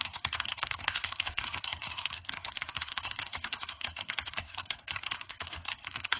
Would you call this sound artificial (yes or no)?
yes